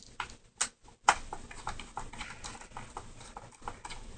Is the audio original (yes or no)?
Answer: yes